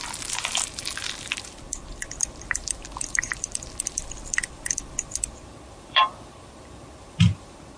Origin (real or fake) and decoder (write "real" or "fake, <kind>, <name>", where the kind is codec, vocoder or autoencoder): fake, vocoder, BigVGAN v2